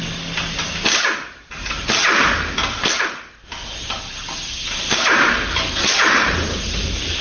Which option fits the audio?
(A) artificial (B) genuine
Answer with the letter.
B